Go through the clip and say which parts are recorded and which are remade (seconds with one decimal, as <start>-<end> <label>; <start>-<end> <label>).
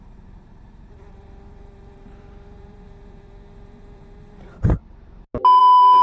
0.0-4.8 remade; 4.8-5.6 recorded; 5.6-6.0 remade